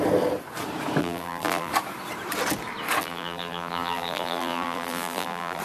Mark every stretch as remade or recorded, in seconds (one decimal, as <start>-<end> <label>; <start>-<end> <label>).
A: 0.0-1.0 recorded; 1.0-1.7 remade; 1.7-3.0 recorded; 3.0-5.6 remade